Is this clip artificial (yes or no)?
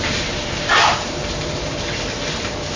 yes